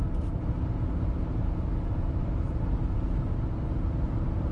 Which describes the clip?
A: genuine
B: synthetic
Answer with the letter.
A